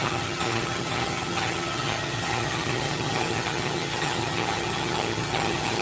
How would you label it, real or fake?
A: fake